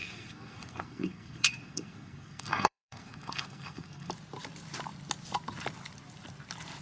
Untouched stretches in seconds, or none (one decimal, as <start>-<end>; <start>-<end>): 4.1-6.8